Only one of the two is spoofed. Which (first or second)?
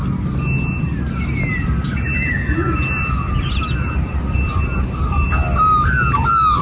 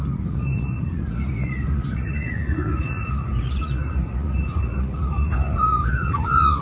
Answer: second